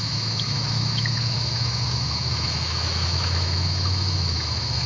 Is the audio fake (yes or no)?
yes